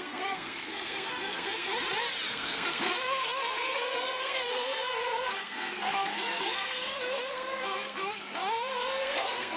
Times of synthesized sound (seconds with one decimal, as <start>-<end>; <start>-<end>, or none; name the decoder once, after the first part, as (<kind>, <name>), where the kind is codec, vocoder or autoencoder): 0.0-1.7 (codec, SNAC); 2.3-9.6